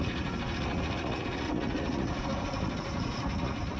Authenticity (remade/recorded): remade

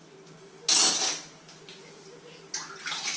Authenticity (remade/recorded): recorded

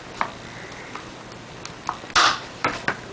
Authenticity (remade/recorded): recorded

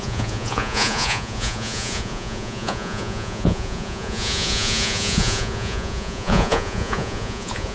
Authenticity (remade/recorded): remade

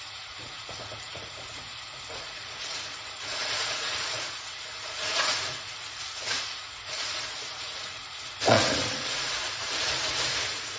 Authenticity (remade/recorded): remade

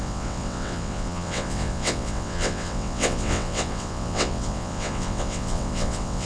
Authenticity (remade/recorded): remade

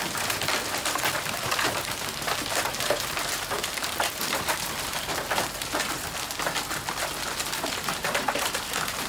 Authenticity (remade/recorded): recorded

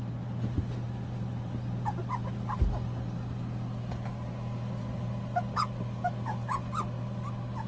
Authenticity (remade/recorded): recorded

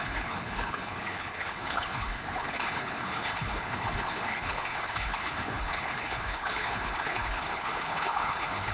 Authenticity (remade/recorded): remade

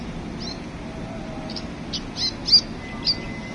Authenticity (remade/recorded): recorded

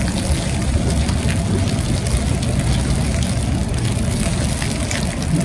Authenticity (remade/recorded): recorded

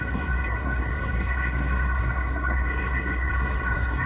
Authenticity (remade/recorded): remade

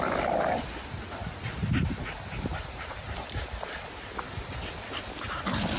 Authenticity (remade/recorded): recorded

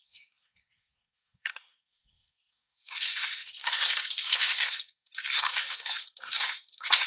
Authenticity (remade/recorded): remade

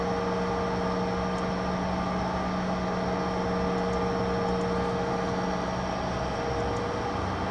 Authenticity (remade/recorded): recorded